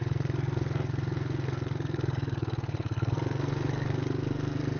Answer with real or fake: fake